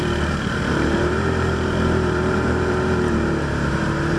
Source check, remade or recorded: remade